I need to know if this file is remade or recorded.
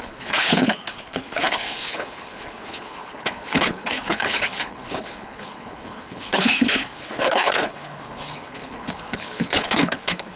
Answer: remade